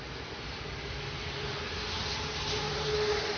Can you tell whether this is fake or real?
real